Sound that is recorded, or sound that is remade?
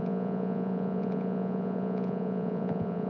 remade